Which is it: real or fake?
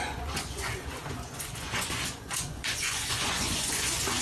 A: fake